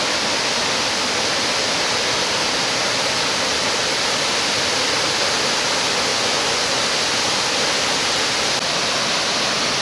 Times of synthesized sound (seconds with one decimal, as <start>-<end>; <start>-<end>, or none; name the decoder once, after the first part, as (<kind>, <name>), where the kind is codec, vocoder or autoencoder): 6.1-6.8 (vocoder, Vocos)

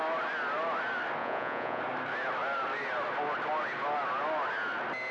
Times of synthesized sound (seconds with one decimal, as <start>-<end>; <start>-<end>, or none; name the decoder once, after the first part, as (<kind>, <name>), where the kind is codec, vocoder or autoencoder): 1.2-1.8 (vocoder, Vocos)

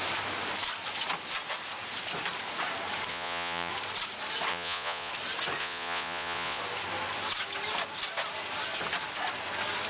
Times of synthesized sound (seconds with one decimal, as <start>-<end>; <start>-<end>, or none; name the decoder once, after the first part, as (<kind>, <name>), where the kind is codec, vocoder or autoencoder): 3.1-3.7 (vocoder, Vocos); 4.5-5.1; 5.6-6.6

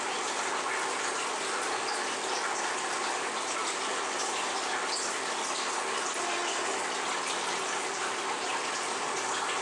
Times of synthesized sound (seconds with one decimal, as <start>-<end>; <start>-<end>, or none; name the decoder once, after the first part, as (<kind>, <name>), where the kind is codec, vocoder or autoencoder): none

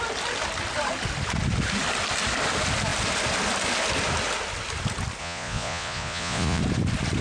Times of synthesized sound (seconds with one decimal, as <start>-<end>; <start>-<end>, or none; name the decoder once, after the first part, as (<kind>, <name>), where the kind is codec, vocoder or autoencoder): 5.2-6.6 (vocoder, Vocos)

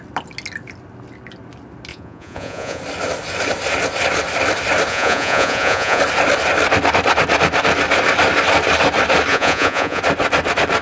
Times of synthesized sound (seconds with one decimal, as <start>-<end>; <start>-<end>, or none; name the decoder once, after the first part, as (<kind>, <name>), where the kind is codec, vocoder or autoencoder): 1.9-2.8 (vocoder, Vocos); 4.9-6.0; 9.3-10.0